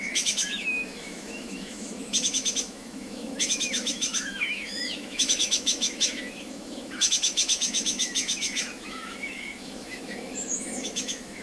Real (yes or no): no